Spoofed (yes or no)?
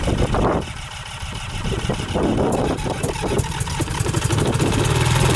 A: no